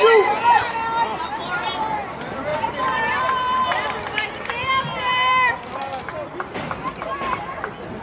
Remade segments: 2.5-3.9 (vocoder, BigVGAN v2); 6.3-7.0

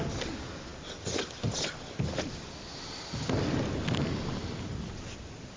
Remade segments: none

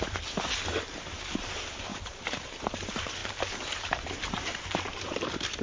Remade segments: 0.0-5.6 (vocoder, BigVGAN v2)

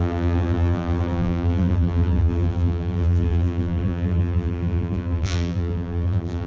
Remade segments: 0.0-6.5 (vocoder, BigVGAN v2)

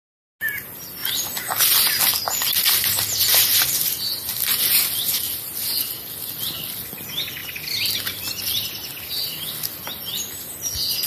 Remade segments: none